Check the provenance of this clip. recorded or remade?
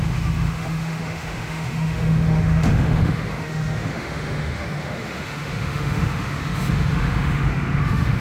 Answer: remade